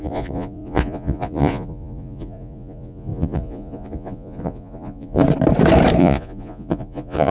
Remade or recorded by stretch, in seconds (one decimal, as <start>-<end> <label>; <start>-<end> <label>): 0.0-5.2 remade; 5.2-6.0 recorded; 6.0-7.3 remade

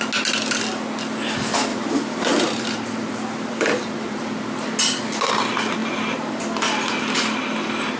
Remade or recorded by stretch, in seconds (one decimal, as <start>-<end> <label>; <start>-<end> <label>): 0.0-1.7 recorded; 1.7-4.4 remade; 4.4-5.8 recorded; 5.8-6.4 remade; 6.4-8.0 recorded

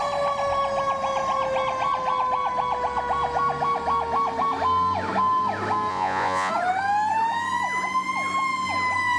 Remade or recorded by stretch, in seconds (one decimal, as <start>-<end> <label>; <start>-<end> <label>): 0.0-5.9 recorded; 5.9-6.5 remade; 6.5-9.2 recorded

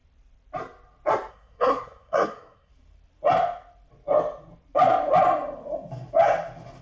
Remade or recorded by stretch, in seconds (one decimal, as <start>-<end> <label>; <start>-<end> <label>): 0.0-1.3 recorded; 1.3-2.7 remade; 2.7-6.8 recorded

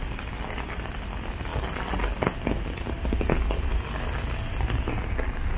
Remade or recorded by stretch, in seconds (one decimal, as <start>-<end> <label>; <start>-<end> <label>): 0.0-5.6 recorded

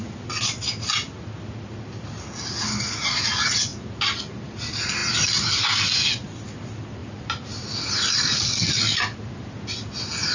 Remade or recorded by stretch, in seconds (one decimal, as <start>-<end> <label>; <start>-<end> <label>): 0.0-10.3 recorded

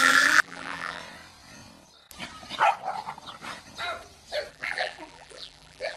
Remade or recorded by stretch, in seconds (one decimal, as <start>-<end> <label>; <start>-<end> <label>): 0.0-1.0 remade; 1.0-4.5 recorded; 4.5-6.0 remade

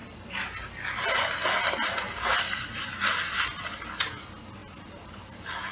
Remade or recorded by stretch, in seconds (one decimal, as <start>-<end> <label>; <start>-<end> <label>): 0.0-4.6 recorded; 4.6-5.2 remade; 5.2-5.7 recorded